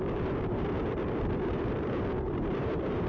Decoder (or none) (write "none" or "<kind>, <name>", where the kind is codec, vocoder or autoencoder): vocoder, BigVGAN v2